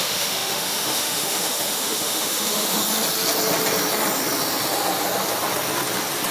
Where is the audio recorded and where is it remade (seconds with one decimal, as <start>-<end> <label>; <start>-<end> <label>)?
0.0-2.8 remade; 2.8-6.3 recorded